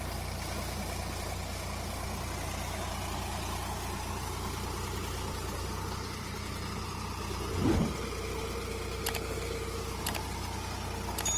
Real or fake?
real